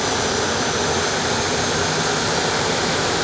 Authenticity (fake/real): real